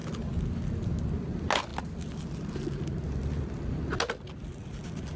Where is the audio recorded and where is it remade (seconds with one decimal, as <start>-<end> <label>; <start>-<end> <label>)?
0.0-5.2 recorded